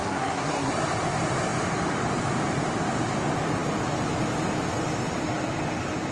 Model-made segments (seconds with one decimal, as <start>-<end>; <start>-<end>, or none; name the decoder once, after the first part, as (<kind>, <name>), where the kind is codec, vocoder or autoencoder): 0.0-0.7 (codec, SNAC)